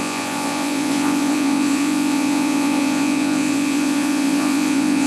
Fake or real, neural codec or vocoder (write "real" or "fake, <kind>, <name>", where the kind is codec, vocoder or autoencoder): fake, vocoder, Vocos